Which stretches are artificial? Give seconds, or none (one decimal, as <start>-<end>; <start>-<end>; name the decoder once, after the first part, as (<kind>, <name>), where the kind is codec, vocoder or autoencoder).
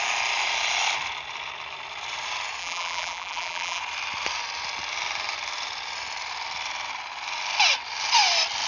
2.6-3.8 (vocoder, BigVGAN v2)